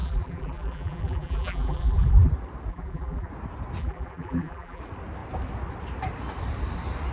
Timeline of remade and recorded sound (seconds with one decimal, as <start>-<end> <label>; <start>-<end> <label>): 0.0-2.3 remade; 2.3-2.7 recorded; 2.7-3.3 remade; 3.3-3.8 recorded; 3.8-4.8 remade; 4.8-7.1 recorded